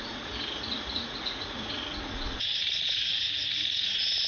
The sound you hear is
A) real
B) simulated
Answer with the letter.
B